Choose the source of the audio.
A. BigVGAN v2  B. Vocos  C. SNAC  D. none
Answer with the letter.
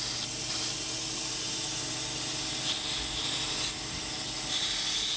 D